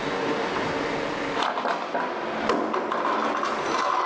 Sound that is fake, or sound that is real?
real